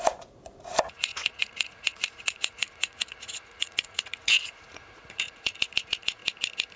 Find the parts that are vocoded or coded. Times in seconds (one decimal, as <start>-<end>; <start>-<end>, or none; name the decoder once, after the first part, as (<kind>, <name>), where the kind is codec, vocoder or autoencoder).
0.0-6.2 (vocoder, Vocos)